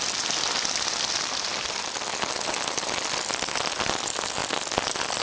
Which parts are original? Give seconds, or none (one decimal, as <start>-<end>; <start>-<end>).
0.0-5.2